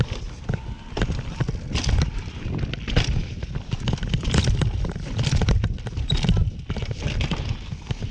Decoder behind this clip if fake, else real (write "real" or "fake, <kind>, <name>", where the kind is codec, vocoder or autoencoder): real